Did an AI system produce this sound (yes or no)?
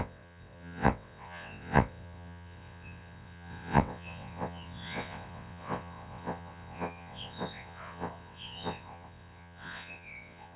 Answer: yes